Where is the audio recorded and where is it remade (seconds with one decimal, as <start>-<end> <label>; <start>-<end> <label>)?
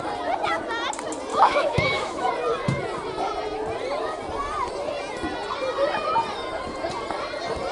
0.0-1.3 recorded; 1.3-2.3 remade; 2.3-7.7 recorded